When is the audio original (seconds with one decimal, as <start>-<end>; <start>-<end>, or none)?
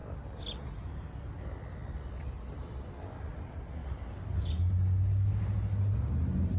0.0-6.6